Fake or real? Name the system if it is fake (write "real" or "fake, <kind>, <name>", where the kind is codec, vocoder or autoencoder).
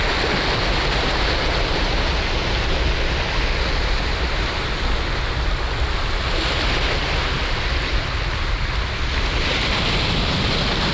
real